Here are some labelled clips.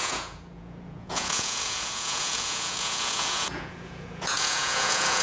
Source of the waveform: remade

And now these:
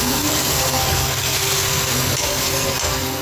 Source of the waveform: remade